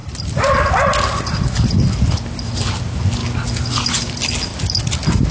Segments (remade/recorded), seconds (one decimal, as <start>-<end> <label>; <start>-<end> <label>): 0.0-5.3 recorded